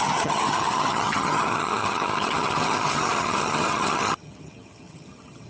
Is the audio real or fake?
fake